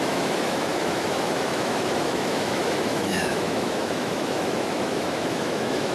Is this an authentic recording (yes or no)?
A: no